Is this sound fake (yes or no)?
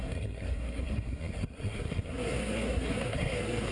yes